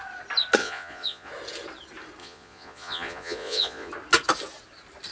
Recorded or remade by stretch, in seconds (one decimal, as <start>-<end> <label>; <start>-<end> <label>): 0.0-0.6 recorded; 0.6-1.3 remade; 1.3-2.2 recorded; 2.2-3.9 remade; 3.9-5.1 recorded